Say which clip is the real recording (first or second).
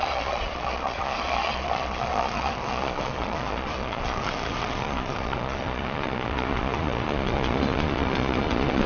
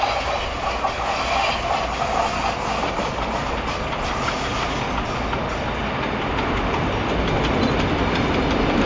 second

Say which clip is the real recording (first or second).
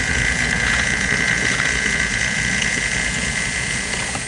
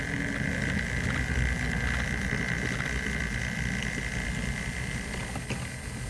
second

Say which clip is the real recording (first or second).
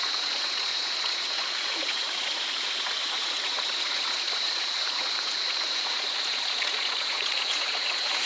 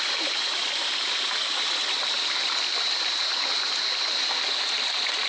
second